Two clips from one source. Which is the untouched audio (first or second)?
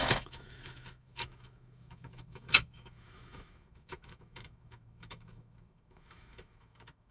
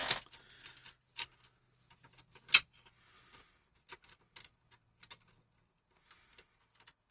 second